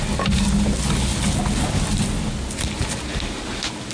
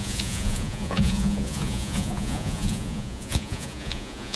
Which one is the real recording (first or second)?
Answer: first